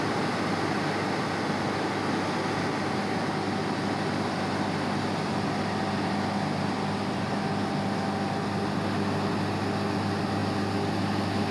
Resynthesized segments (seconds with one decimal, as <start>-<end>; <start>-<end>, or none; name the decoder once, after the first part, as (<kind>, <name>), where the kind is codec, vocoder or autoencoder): none